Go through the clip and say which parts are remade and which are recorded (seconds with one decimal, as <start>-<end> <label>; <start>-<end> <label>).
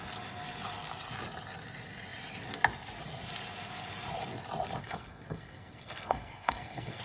0.0-4.8 recorded; 4.8-7.0 remade